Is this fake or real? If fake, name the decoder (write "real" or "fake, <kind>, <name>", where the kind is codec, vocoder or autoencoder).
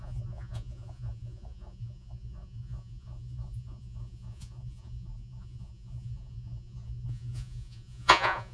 fake, vocoder, Vocos